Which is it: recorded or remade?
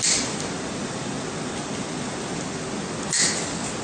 recorded